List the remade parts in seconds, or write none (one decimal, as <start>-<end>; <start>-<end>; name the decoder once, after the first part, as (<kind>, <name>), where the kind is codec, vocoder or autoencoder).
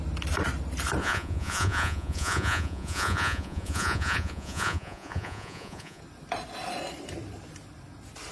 1.0-6.0 (vocoder, Vocos)